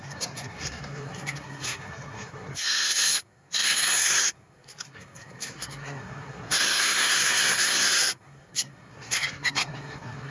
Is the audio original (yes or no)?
no